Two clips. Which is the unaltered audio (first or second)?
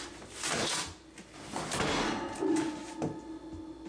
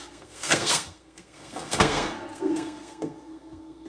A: first